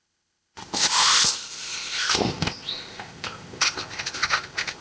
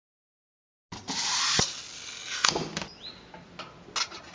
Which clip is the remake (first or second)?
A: first